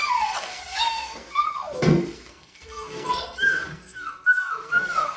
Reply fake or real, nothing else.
fake